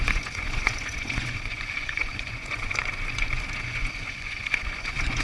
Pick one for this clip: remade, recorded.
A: remade